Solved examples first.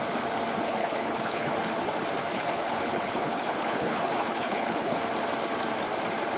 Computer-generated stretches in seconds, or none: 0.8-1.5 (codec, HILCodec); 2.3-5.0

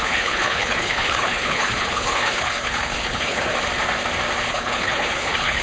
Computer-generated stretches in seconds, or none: 0.0-3.5 (codec, HILCodec); 4.5-5.6

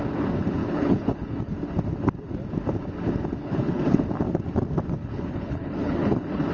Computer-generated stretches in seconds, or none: 0.6-1.4 (codec, HILCodec); 3.4-4.0; 5.0-6.5

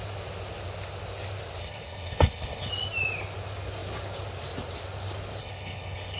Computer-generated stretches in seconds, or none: 1.6-2.7 (codec, HILCodec); 5.4-6.2

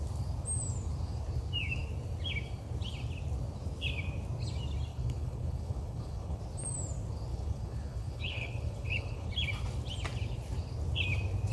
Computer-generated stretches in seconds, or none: 4.9-6.4 (codec, HILCodec); 7.3-9.3

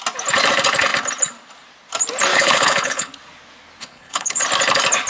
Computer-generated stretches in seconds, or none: 2.3-3.1 (codec, HILCodec); 3.8-4.4